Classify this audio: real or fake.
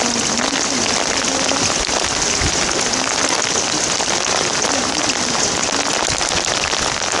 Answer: real